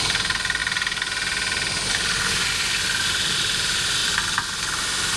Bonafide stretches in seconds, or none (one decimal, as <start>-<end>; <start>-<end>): 0.0-5.2